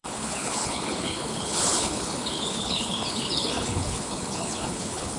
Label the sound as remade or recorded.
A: remade